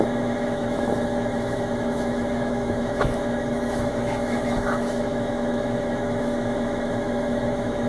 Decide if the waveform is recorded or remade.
remade